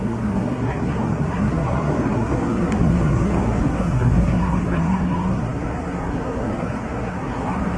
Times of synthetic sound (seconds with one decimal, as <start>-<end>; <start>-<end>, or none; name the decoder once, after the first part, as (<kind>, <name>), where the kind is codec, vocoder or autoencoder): 0.0-7.8 (codec, SNAC)